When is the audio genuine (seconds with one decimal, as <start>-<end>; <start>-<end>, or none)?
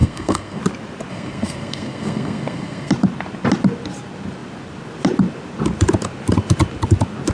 0.6-1.1; 2.9-7.3